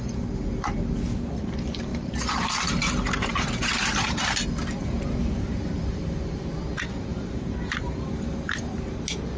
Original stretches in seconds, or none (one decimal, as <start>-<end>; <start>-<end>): 0.0-1.9; 4.3-4.8; 6.6-7.1; 7.8-9.4